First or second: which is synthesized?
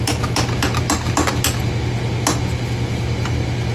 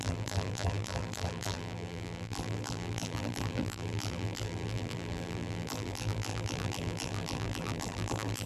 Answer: second